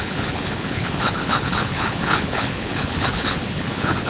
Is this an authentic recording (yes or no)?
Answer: no